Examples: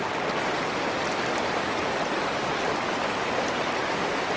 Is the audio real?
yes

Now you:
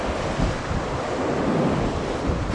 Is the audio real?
yes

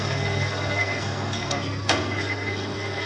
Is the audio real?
no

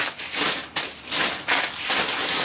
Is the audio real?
yes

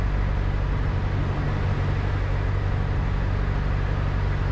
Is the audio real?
yes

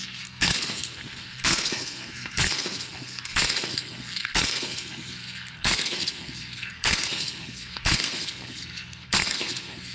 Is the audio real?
no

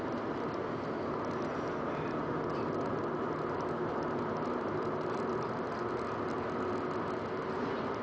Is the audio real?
yes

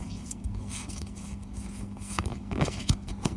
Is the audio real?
no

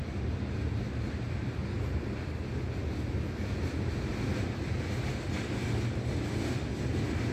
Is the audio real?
yes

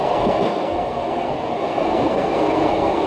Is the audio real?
no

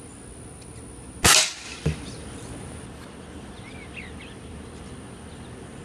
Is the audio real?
yes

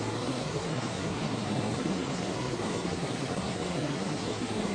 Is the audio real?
no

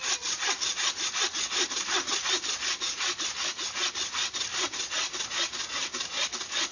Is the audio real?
yes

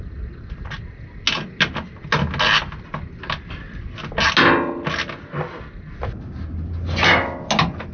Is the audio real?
yes